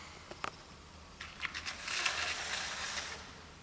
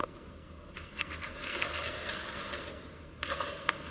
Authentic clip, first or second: first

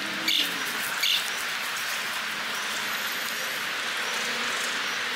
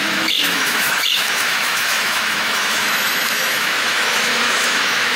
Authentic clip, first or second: first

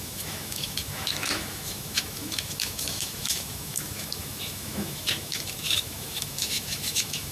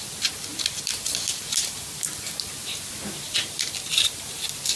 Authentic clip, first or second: second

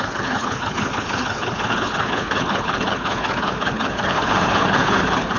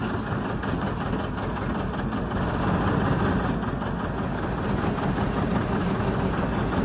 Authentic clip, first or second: second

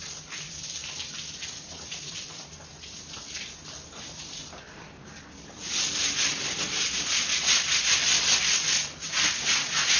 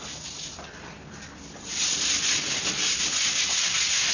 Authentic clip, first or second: second